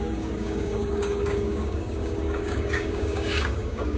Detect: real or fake fake